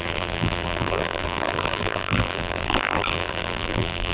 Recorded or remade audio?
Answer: remade